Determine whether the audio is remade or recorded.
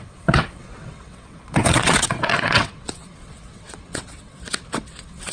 remade